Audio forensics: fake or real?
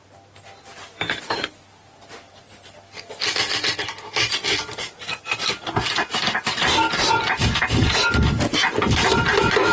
real